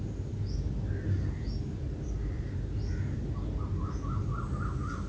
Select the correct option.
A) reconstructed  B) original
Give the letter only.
B